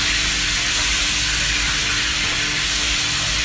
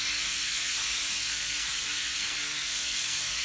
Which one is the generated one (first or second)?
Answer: second